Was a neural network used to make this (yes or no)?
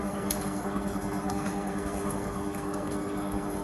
yes